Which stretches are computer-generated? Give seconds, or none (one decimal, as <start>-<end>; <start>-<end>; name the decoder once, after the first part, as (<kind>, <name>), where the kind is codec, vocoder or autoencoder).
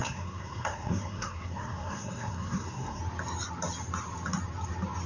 0.0-3.0 (codec, SNAC)